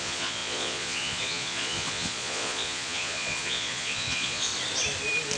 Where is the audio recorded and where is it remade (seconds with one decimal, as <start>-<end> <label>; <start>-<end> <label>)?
0.0-4.5 remade; 4.5-5.4 recorded